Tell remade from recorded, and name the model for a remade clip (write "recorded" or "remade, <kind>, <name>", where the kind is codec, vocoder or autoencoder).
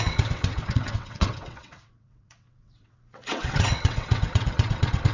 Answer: remade, vocoder, WaveNeXt